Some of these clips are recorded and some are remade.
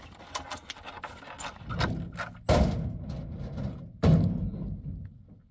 recorded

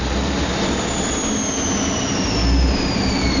recorded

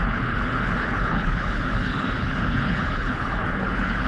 remade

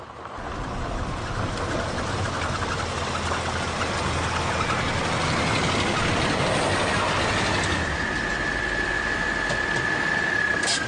recorded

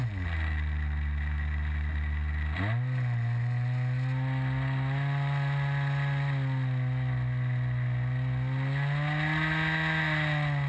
recorded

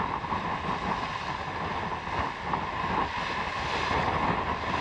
recorded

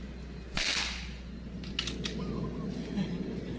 recorded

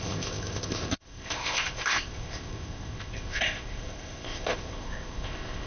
remade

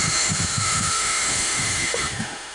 remade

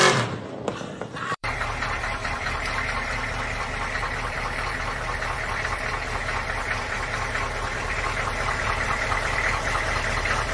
remade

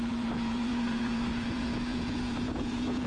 remade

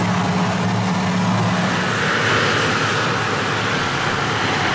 recorded